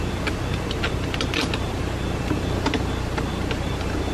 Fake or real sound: real